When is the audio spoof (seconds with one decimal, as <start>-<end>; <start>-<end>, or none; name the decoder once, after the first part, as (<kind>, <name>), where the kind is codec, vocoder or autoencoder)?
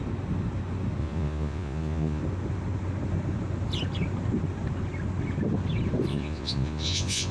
1.0-2.2 (vocoder, Vocos); 6.1-7.3